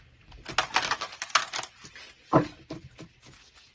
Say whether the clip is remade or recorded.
recorded